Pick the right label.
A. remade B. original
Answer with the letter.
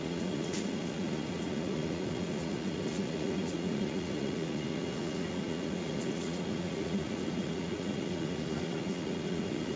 A